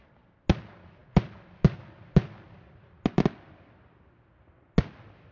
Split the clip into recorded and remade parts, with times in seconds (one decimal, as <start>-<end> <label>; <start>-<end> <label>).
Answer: 0.0-5.3 recorded